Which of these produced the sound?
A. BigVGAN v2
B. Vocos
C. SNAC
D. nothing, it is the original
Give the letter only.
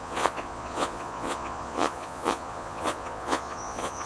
B